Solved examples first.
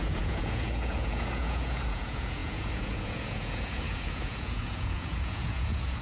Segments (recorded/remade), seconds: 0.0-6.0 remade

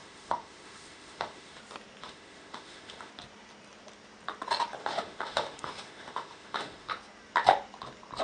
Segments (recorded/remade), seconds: 0.0-1.6 remade; 1.6-2.0 recorded; 2.0-3.1 remade; 3.1-4.8 recorded; 4.8-6.9 remade; 6.9-8.2 recorded

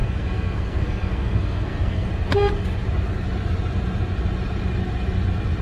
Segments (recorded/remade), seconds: 0.0-2.1 remade; 2.1-5.6 recorded

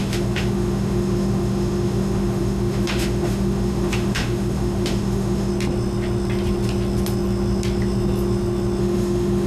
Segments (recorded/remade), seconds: 0.0-5.5 remade; 5.5-8.8 recorded; 8.8-9.5 remade

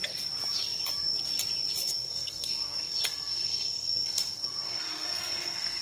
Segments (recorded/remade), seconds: 0.0-2.0 recorded; 2.0-5.8 remade

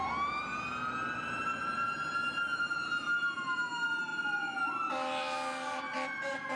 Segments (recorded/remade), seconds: 0.0-6.6 recorded

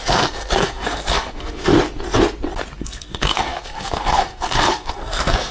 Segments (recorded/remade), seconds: 0.0-1.7 remade; 1.7-2.8 recorded; 2.8-5.5 remade

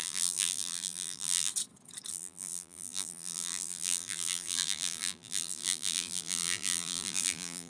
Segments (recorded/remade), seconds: 0.0-1.5 remade; 1.5-2.1 recorded; 2.1-7.7 remade